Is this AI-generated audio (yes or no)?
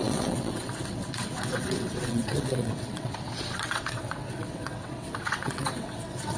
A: yes